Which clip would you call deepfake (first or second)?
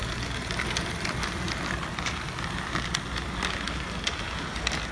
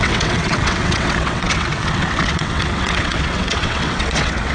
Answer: second